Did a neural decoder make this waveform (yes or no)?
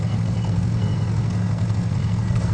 yes